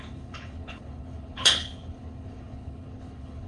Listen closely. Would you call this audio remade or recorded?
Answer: remade